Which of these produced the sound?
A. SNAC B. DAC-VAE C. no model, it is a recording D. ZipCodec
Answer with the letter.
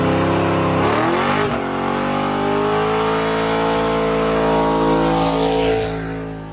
C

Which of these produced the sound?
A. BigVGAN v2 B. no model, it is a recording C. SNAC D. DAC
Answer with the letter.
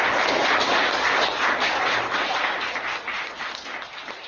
B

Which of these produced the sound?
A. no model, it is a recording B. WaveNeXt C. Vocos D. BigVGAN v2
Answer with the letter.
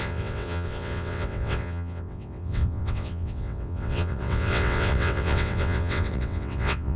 B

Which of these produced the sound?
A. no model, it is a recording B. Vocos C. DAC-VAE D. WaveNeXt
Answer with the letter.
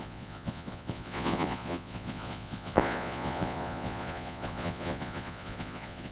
B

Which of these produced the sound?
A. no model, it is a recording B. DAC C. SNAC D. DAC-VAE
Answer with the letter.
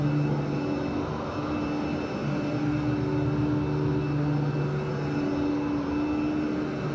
A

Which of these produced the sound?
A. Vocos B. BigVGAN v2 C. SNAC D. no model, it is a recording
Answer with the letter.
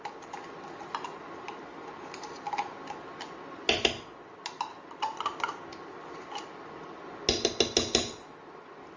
D